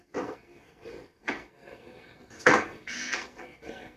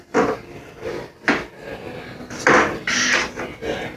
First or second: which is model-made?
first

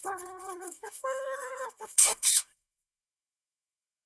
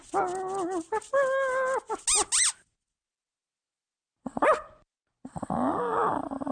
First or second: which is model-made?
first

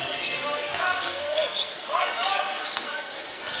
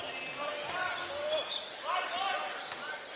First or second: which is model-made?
first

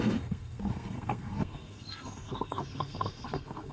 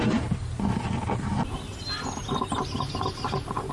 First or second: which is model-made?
first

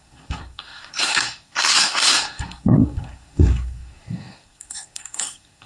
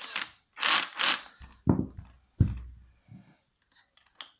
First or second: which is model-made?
first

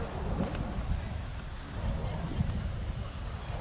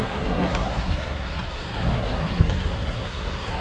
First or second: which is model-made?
second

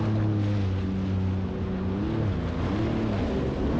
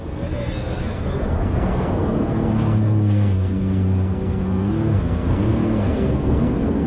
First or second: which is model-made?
second